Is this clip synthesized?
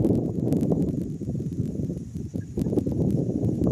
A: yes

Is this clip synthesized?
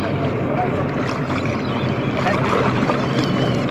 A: yes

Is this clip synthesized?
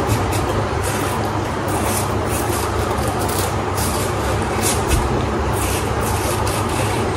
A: yes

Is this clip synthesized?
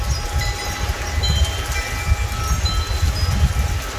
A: no